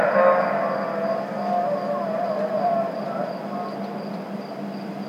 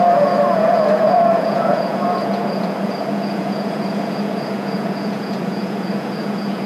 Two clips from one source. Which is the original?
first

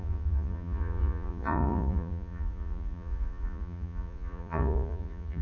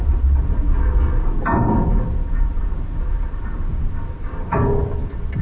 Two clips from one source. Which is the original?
second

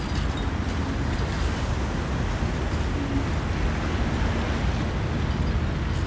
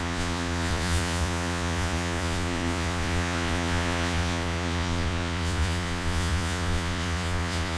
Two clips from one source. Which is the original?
first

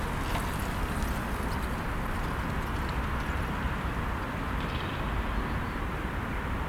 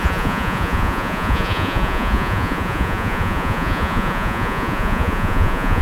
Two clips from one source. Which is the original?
first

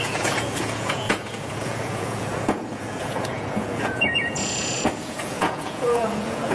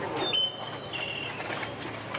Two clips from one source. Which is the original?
second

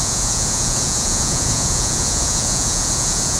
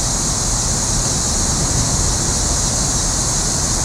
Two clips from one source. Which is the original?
second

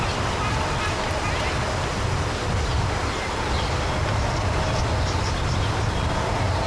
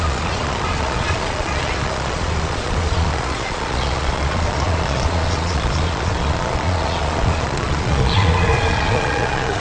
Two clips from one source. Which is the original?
first